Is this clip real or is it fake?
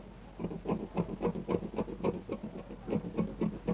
real